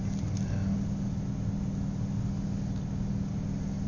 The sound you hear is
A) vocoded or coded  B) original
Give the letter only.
B